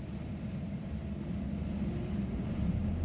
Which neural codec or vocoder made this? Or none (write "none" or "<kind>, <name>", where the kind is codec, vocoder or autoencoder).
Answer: none